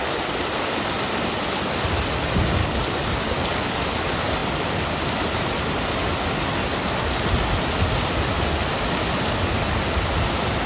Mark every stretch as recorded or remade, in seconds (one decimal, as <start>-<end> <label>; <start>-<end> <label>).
0.0-2.6 recorded; 2.6-3.4 remade; 3.4-10.7 recorded